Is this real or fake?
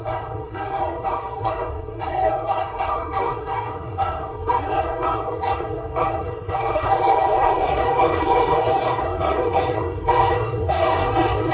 fake